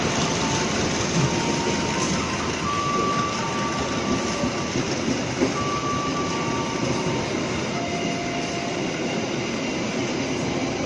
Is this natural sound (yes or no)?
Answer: yes